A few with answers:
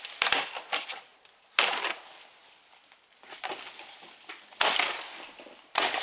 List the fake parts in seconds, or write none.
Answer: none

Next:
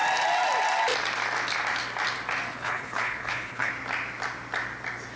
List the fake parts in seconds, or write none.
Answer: 2.5-3.7 (codec, HILCodec)